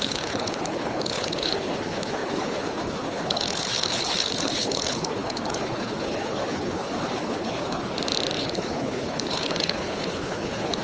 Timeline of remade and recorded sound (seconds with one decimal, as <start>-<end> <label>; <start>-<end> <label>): 0.0-7.9 remade; 7.9-8.4 recorded; 8.4-10.8 remade